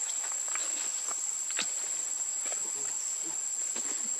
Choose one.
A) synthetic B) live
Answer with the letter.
B